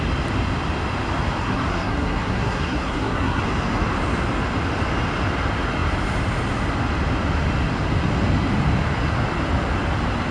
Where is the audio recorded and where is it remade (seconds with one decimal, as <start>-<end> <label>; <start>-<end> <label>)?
0.0-1.4 recorded; 1.4-3.4 remade; 3.4-10.3 recorded